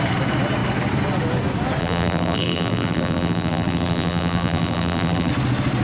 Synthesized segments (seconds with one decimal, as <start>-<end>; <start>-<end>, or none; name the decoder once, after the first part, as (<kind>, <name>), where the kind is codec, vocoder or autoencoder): 1.8-5.3 (vocoder, BigVGAN v2)